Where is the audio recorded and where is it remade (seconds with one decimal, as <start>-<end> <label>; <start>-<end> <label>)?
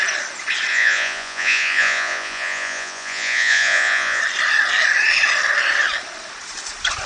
0.0-0.7 recorded; 0.7-4.2 remade; 4.2-7.1 recorded